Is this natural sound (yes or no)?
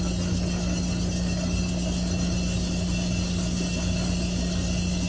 yes